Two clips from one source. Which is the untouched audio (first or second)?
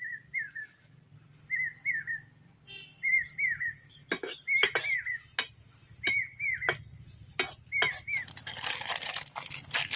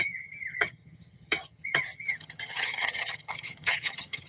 first